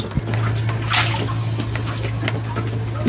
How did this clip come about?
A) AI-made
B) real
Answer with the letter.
B